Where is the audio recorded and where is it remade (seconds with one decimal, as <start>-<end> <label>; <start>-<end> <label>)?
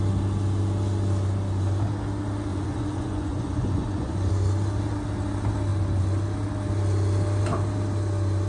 0.0-2.5 recorded; 2.5-4.3 remade; 4.3-8.5 recorded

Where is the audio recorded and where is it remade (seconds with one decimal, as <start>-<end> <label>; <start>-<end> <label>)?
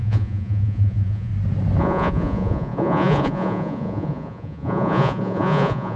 0.0-1.3 remade; 1.3-1.8 recorded; 1.8-6.0 remade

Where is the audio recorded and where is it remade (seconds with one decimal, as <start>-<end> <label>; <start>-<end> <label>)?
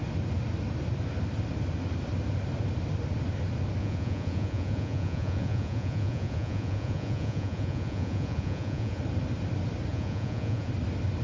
0.0-3.8 recorded; 3.8-9.0 remade; 9.0-9.9 recorded; 9.9-10.7 remade; 10.7-11.2 recorded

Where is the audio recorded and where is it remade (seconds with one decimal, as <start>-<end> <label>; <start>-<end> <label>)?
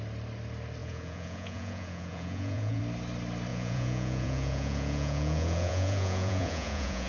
0.0-0.8 recorded; 0.8-2.8 remade; 2.8-3.5 recorded; 3.5-7.1 remade